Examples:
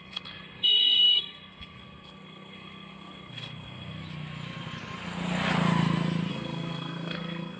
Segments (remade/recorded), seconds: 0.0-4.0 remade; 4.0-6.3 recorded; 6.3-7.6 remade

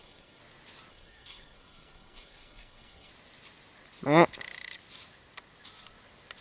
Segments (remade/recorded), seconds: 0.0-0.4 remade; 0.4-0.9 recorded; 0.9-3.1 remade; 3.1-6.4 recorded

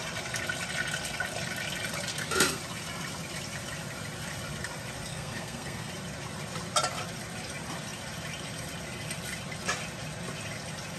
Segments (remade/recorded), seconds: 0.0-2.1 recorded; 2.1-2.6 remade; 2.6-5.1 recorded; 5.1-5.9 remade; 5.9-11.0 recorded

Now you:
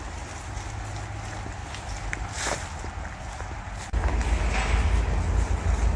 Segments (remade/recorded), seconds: 0.0-6.0 recorded

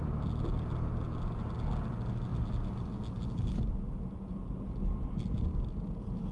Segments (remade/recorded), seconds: 0.0-6.3 recorded